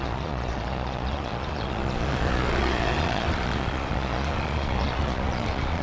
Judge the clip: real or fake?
fake